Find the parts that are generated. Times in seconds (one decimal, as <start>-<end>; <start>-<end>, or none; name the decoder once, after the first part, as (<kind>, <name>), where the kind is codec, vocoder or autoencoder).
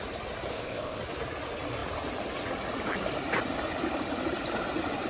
0.5-1.0 (codec, ZipCodec)